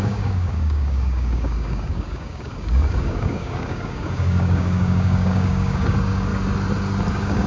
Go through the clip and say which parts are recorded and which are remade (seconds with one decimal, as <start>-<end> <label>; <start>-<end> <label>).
0.0-6.3 remade; 6.3-7.1 recorded; 7.1-7.5 remade